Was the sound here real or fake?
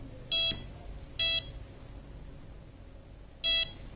real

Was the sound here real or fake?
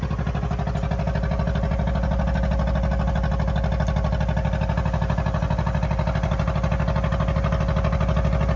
real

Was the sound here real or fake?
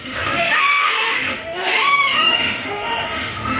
fake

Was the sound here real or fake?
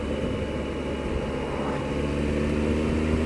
real